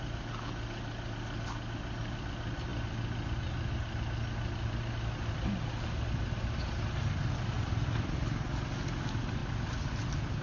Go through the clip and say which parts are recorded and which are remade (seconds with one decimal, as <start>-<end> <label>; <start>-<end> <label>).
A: 0.0-10.4 recorded